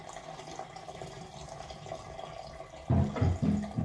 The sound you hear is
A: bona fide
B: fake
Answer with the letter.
A